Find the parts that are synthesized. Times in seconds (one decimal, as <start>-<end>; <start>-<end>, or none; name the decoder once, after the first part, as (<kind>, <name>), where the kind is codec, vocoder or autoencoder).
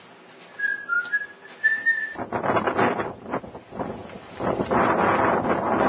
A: none